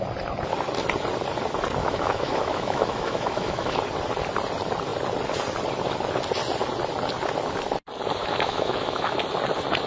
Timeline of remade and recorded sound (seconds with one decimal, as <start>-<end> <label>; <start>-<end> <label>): 0.0-1.8 recorded; 1.8-3.8 remade; 3.8-8.2 recorded; 8.2-9.2 remade; 9.2-9.9 recorded